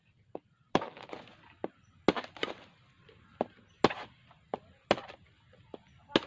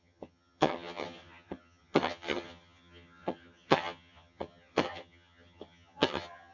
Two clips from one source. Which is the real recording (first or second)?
first